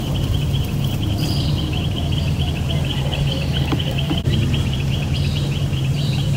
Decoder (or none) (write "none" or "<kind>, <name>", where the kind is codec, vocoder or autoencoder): vocoder, BigVGAN v2